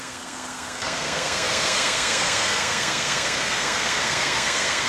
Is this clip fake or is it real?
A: fake